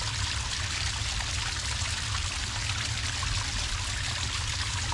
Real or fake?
real